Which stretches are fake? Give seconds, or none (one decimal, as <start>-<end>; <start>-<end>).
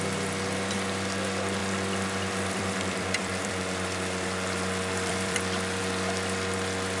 1.6-5.8